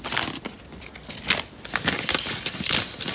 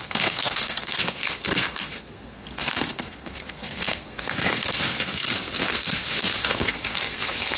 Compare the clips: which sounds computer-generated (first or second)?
second